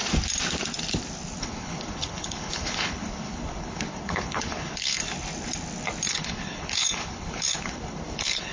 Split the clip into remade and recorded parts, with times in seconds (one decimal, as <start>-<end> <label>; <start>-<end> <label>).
0.0-1.4 recorded; 1.4-5.0 remade; 5.0-6.1 recorded; 6.1-8.5 remade